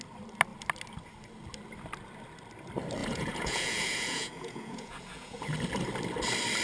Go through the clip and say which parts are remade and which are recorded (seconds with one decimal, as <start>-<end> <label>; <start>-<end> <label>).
0.0-3.0 recorded; 3.0-5.5 remade; 5.5-6.6 recorded